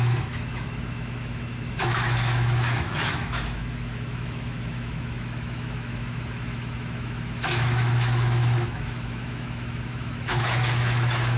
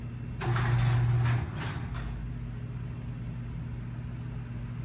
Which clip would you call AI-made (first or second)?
first